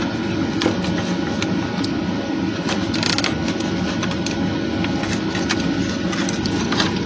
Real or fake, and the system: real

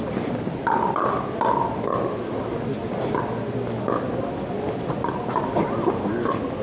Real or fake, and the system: real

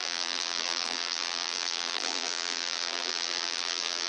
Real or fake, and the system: fake, vocoder, BigVGAN v2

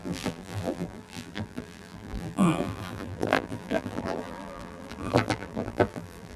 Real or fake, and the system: fake, vocoder, BigVGAN v2